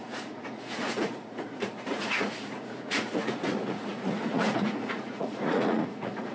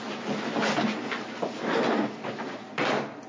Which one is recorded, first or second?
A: second